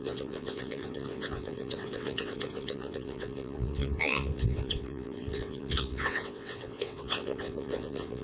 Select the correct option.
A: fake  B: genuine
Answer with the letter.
A